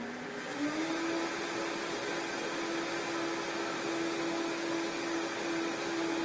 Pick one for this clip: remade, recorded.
recorded